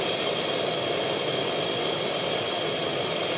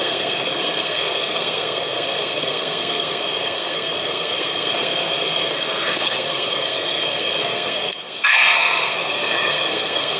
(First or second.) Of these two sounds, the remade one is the second